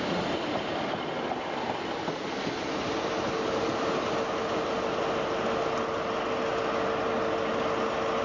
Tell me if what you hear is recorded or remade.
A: recorded